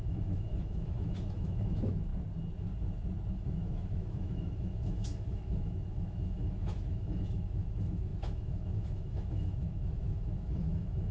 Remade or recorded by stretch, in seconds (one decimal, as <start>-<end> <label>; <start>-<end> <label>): 0.0-2.1 remade; 2.1-3.3 recorded; 3.3-11.1 remade

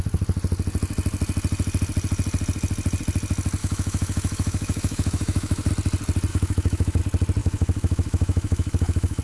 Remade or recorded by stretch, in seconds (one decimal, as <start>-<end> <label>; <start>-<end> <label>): 0.0-3.6 recorded; 3.6-5.7 remade; 5.7-6.3 recorded; 6.3-7.0 remade; 7.0-7.4 recorded; 7.4-9.2 remade

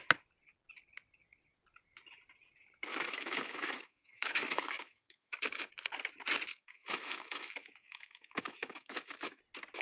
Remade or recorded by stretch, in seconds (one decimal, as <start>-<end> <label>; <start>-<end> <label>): 0.0-2.9 recorded; 2.9-5.7 remade; 5.7-6.5 recorded; 6.5-9.4 remade; 9.4-9.8 recorded

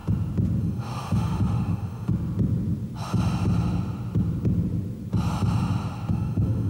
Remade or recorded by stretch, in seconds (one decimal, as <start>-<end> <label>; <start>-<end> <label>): 0.0-0.6 recorded; 0.6-2.1 remade; 2.1-6.1 recorded; 6.1-6.7 remade

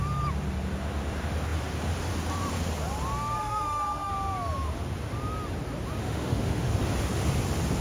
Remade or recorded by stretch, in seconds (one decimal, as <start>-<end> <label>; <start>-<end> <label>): 0.0-3.4 recorded; 3.4-4.1 remade; 4.1-6.0 recorded; 6.0-6.7 remade; 6.7-7.8 recorded

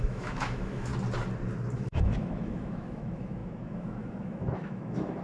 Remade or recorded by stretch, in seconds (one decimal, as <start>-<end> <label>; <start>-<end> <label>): 0.0-0.9 remade; 0.9-1.7 recorded; 1.7-5.2 remade

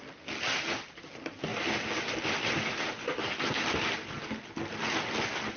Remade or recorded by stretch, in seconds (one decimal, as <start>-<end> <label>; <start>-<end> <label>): 0.0-5.6 recorded